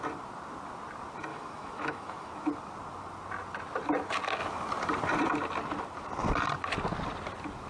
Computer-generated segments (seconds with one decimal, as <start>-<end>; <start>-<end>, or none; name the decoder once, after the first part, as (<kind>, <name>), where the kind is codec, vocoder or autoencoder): 1.3-2.3 (autoencoder, DAC-VAE)